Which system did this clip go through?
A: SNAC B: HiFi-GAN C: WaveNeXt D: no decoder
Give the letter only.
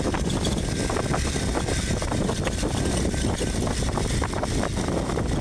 D